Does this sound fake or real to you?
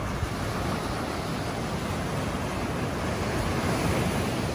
real